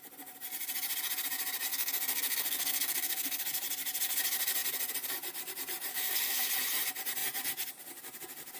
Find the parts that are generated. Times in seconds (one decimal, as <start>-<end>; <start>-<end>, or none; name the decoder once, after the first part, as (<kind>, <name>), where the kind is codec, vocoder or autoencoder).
1.7-3.4 (codec, SNAC); 5.9-6.5